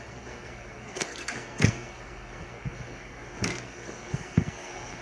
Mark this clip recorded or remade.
remade